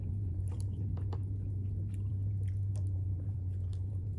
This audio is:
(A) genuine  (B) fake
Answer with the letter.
B